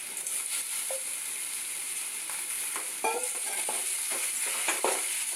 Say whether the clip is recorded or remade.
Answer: remade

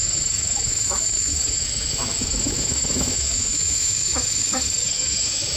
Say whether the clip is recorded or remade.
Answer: remade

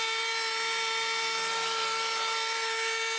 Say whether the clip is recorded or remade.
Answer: recorded